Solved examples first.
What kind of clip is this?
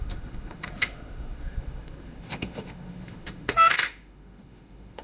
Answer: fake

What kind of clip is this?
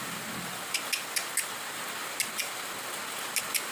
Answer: real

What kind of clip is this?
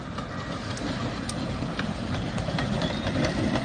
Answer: real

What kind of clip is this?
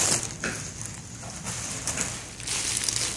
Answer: real